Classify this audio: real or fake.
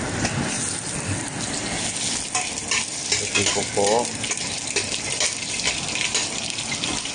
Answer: real